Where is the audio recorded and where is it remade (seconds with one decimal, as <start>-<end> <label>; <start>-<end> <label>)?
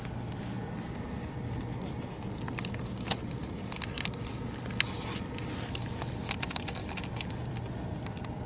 0.0-8.5 recorded